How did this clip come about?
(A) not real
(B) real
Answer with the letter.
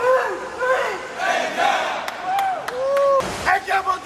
B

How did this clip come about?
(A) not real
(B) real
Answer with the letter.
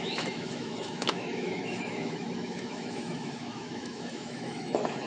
A